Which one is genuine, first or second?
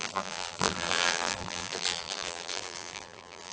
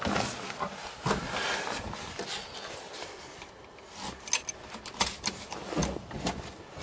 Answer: second